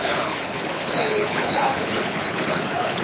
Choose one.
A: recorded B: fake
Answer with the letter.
B